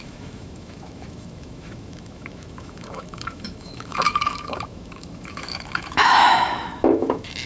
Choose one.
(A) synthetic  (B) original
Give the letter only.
A